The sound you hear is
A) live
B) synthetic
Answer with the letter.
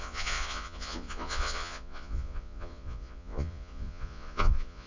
B